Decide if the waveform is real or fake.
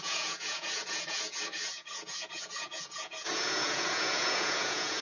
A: fake